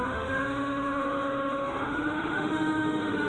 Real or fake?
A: fake